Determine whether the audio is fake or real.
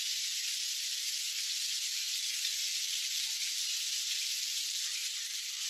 fake